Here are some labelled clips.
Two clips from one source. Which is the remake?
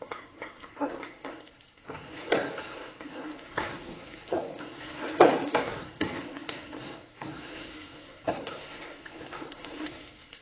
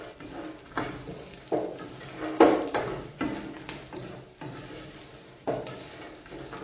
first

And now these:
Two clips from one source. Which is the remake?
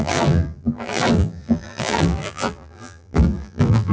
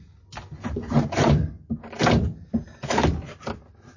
first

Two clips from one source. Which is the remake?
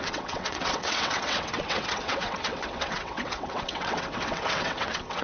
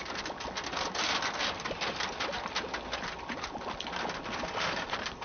first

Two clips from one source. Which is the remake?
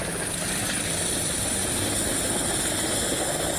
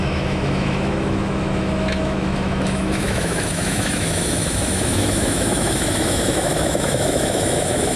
second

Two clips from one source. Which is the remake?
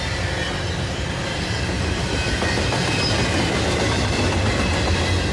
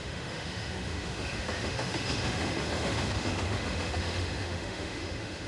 second